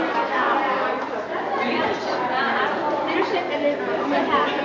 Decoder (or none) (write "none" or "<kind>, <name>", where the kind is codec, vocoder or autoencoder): none